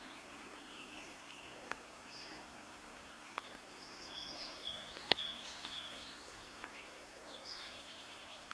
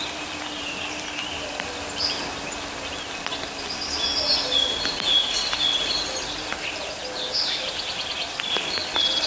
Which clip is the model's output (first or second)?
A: first